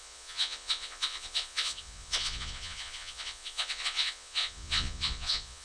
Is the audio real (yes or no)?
no